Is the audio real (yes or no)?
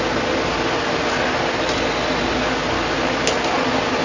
yes